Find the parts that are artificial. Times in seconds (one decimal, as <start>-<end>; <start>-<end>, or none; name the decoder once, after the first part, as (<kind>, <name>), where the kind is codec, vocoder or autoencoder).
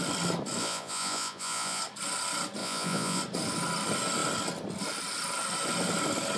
0.6-1.8 (vocoder, Vocos); 2.6-3.2